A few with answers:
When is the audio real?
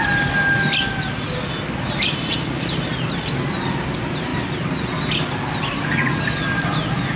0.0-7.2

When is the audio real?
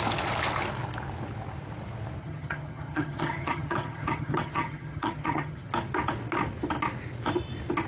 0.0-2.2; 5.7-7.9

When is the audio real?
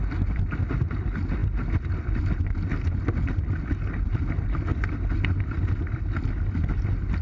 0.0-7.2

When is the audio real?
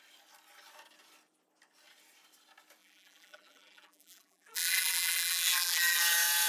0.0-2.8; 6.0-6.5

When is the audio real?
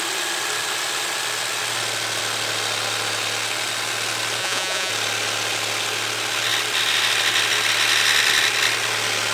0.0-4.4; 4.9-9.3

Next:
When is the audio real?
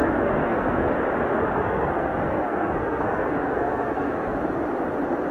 0.9-1.3; 4.4-5.3